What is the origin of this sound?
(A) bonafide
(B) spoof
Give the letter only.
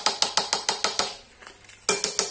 A